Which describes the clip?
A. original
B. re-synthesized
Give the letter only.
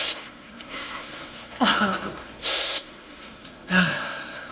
B